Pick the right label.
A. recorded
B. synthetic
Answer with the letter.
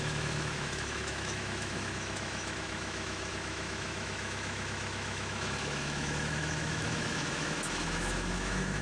B